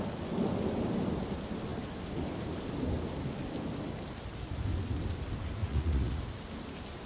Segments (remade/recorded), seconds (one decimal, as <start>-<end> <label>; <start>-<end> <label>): 0.0-5.6 recorded; 5.6-6.2 remade; 6.2-7.1 recorded